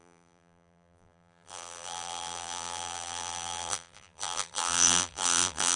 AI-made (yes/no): yes